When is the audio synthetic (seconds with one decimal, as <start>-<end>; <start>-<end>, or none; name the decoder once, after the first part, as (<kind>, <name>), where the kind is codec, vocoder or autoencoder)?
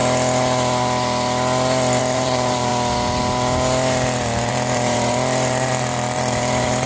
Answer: 2.0-2.7 (vocoder, BigVGAN v2); 4.5-6.9